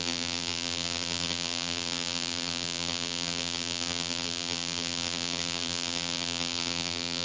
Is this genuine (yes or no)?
no